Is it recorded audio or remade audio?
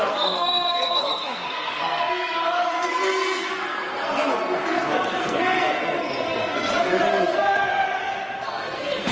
remade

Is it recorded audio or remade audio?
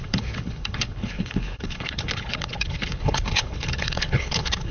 remade